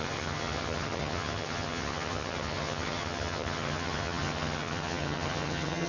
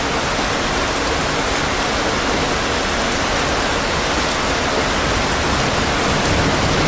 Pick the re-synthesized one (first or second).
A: first